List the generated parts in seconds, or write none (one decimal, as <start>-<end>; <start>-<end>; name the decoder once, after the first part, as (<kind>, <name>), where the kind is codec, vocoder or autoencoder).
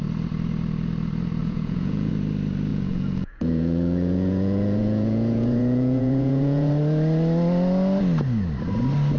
1.4-2.1 (vocoder, Vocos); 2.7-6.7